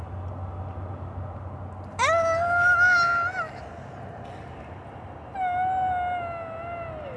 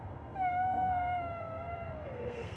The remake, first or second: second